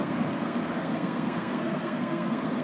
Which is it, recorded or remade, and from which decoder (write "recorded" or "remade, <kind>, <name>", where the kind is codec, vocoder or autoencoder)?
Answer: remade, codec, SNAC